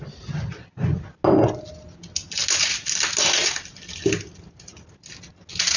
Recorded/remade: recorded